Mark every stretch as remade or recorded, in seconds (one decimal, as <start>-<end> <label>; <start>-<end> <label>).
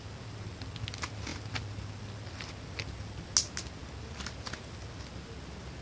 0.0-5.8 recorded